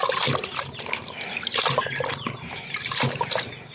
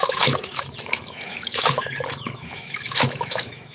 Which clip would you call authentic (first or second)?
first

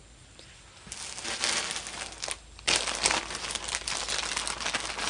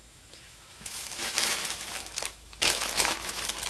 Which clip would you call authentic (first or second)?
first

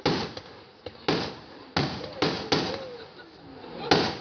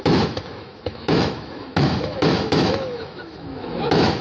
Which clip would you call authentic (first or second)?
first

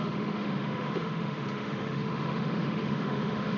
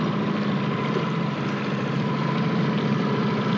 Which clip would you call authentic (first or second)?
second